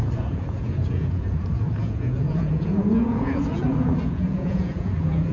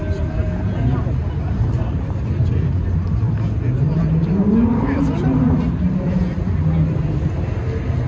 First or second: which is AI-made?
first